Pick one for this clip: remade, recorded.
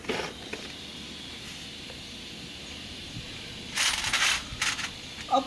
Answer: recorded